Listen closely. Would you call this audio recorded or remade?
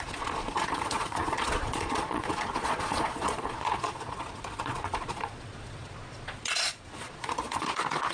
remade